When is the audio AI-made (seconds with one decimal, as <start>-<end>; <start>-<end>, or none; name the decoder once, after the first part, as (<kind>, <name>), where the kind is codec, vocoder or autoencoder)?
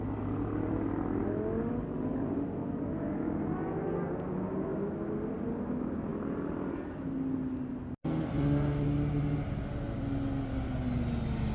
none